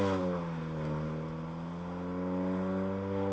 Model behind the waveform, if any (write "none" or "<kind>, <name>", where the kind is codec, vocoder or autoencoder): none